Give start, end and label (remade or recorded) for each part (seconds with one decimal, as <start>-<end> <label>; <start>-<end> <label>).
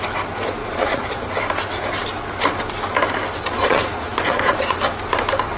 0.0-0.6 recorded; 0.6-1.3 remade; 1.3-3.6 recorded; 3.6-4.8 remade; 4.8-5.6 recorded